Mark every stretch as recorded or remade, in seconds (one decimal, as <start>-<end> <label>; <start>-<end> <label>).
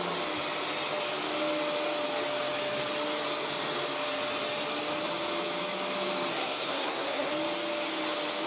0.0-6.3 recorded; 6.3-7.3 remade; 7.3-8.5 recorded